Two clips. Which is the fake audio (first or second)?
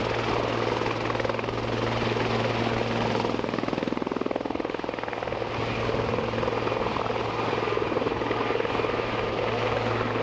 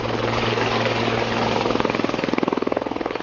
second